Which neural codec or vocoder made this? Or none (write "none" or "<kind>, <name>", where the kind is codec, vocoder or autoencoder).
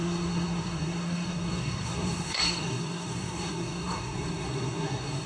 codec, SNAC